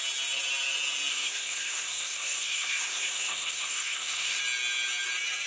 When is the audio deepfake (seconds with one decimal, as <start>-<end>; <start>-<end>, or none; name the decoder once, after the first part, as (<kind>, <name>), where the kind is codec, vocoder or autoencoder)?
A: 1.1-4.4 (codec, SNAC)